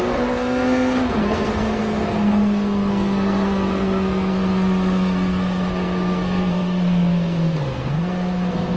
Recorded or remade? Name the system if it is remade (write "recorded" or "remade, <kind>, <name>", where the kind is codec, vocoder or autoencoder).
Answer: remade, codec, SNAC